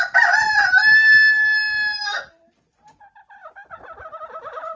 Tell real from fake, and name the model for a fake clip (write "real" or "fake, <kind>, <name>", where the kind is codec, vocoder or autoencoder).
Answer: real